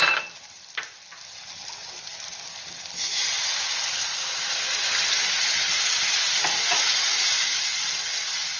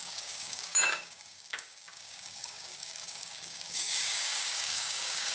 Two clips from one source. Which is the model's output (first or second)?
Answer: second